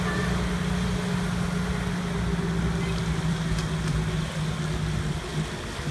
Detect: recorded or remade recorded